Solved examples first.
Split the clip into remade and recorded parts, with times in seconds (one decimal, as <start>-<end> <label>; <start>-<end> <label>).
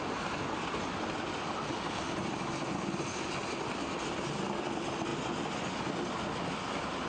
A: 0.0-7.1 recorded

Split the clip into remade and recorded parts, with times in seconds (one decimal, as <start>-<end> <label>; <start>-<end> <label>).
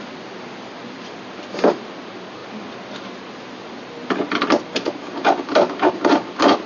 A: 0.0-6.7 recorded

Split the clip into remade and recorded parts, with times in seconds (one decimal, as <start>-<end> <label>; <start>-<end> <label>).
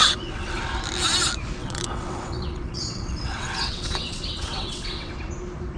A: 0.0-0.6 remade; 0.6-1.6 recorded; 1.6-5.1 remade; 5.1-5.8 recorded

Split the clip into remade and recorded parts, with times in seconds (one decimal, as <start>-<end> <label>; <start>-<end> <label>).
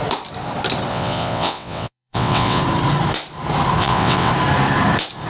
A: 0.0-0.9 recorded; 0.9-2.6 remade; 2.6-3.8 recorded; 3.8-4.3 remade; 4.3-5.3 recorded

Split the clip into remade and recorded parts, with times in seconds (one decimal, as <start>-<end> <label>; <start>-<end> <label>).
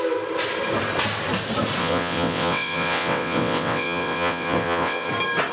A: 0.0-1.8 recorded; 1.8-5.1 remade; 5.1-5.5 recorded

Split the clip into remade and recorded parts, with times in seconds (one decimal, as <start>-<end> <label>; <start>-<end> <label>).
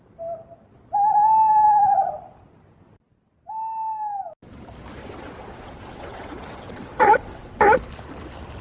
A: 0.0-5.0 recorded; 5.0-7.6 remade; 7.6-8.6 recorded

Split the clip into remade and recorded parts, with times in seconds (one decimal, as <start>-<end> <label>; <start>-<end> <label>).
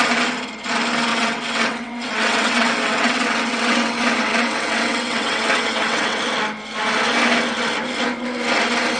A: 0.0-1.1 recorded; 1.1-6.2 remade; 6.2-9.0 recorded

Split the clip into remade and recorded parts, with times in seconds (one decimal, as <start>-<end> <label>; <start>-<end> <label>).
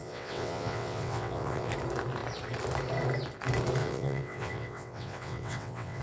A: 0.0-1.7 remade; 1.7-3.8 recorded; 3.8-6.0 remade